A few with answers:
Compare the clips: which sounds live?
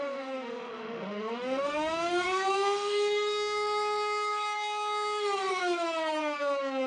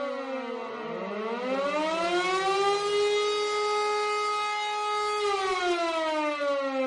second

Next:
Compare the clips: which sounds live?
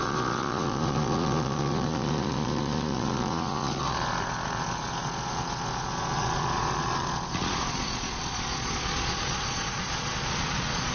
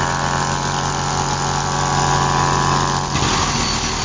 second